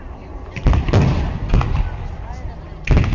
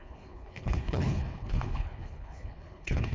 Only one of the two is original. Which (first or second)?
first